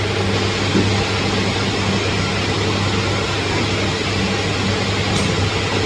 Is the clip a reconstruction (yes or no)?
no